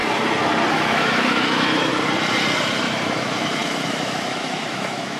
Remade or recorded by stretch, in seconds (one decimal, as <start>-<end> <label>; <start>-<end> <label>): 0.0-0.7 recorded; 0.7-1.9 remade; 1.9-2.8 recorded; 2.8-5.2 remade

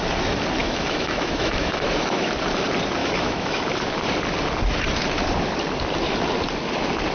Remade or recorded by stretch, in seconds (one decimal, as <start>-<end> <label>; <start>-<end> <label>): 0.0-0.6 recorded; 0.6-2.3 remade; 2.3-3.0 recorded; 3.0-3.6 remade; 3.6-7.1 recorded

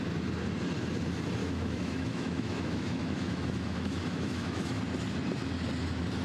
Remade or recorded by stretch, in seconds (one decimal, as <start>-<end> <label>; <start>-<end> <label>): 0.0-1.4 recorded; 1.4-4.8 remade; 4.8-6.2 recorded

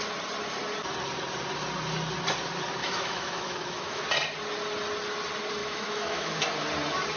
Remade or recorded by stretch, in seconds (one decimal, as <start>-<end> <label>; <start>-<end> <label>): 0.0-2.8 recorded; 2.8-4.0 remade; 4.0-5.6 recorded; 5.6-6.4 remade; 6.4-7.2 recorded

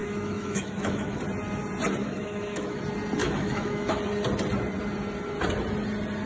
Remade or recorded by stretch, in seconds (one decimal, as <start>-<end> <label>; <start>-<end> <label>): 0.0-1.2 remade; 1.2-2.0 recorded; 2.0-2.8 remade; 2.8-3.2 recorded; 3.2-4.0 remade; 4.0-6.3 recorded

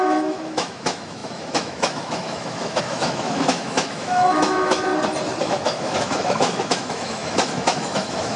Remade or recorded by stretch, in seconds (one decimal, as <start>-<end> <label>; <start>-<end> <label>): 0.0-4.9 remade; 4.9-5.4 recorded; 5.4-8.4 remade

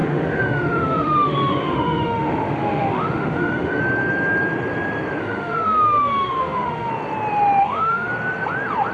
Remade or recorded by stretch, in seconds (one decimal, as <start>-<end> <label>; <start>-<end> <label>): 0.0-3.8 remade; 3.8-5.2 recorded; 5.2-6.9 remade; 6.9-7.6 recorded; 7.6-8.1 remade; 8.1-8.9 recorded

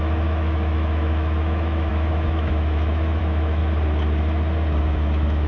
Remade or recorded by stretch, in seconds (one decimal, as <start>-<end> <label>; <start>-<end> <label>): 0.0-3.6 remade; 3.6-4.8 recorded; 4.8-5.5 remade